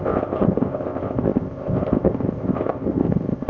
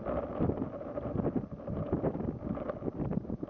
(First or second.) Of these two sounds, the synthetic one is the first